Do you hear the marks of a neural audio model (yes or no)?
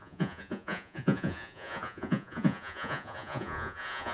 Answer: yes